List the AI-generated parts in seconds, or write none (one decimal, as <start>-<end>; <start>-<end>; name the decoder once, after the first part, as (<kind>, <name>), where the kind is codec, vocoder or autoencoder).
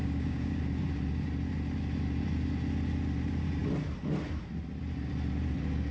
0.0-0.6 (codec, DAC)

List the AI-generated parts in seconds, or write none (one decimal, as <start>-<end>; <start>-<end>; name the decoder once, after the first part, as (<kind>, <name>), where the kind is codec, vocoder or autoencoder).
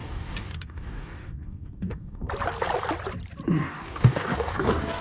0.0-2.3 (codec, DAC); 3.6-5.0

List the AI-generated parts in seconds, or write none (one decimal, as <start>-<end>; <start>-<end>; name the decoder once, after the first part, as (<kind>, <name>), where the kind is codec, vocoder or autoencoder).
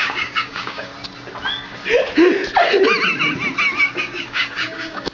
0.0-0.9 (codec, DAC); 4.0-5.1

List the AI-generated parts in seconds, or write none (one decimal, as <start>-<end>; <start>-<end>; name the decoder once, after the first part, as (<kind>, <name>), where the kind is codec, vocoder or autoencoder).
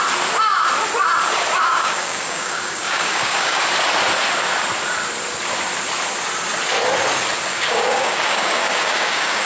1.7-3.6 (codec, DAC); 7.5-9.5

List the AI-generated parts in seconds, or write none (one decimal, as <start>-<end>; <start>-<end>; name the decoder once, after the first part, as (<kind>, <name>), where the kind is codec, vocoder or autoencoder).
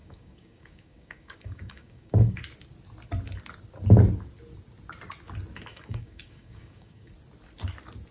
0.0-2.4 (codec, DAC); 5.7-7.1